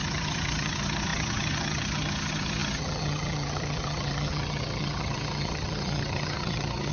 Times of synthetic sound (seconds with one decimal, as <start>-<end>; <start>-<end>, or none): 0.0-6.9